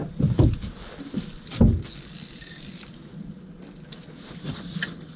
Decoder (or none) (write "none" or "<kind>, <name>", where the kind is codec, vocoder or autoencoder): none